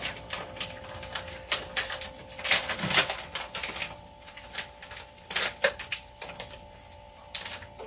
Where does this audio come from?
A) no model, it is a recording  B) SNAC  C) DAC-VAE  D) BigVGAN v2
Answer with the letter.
A